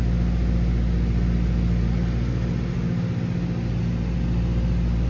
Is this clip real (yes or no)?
yes